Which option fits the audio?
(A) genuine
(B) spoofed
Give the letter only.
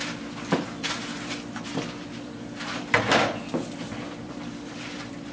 B